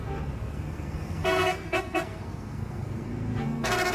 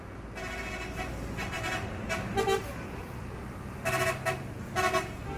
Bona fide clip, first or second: second